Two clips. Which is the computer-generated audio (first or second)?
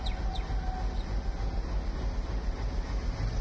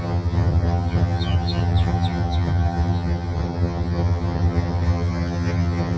second